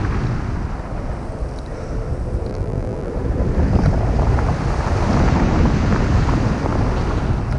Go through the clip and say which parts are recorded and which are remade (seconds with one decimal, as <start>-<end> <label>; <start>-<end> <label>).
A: 0.0-2.5 recorded; 2.5-3.1 remade; 3.1-7.6 recorded